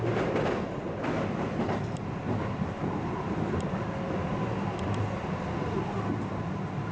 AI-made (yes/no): no